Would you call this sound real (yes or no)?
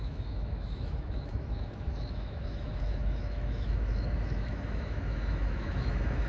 no